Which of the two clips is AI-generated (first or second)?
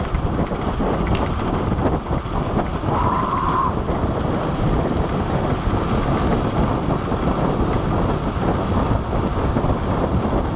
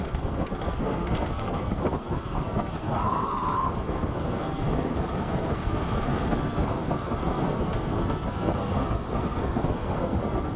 second